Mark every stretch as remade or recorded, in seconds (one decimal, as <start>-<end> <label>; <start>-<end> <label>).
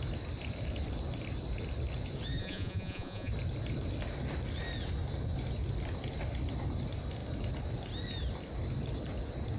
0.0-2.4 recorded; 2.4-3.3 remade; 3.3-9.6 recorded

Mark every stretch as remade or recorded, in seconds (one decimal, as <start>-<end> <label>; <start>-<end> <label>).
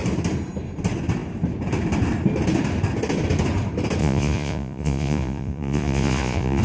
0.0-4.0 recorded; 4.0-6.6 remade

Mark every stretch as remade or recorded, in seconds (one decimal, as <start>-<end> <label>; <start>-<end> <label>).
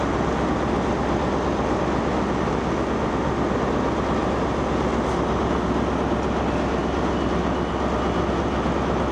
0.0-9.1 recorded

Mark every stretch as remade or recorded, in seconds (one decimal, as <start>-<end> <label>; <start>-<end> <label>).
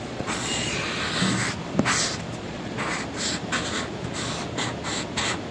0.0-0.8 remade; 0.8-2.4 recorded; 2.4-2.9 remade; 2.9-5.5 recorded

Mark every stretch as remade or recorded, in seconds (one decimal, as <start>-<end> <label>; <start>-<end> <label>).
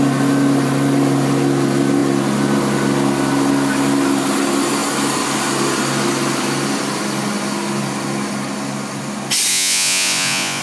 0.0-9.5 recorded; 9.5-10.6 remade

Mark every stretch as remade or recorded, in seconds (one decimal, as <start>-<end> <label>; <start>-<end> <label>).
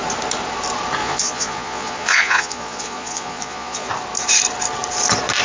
0.0-1.0 recorded; 1.0-3.9 remade; 3.9-5.4 recorded